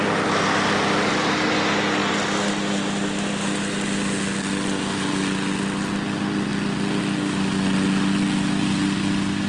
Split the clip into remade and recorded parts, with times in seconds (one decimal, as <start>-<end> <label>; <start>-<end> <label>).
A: 0.0-9.5 recorded